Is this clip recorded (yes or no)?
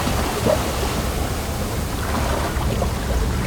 yes